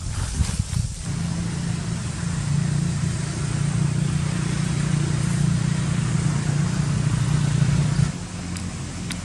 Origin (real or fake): real